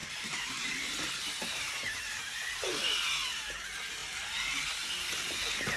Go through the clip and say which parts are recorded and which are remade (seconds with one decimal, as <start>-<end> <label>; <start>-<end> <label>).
0.0-2.8 remade; 2.8-5.8 recorded